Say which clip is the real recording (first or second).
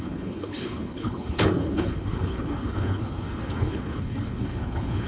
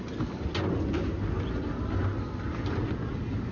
second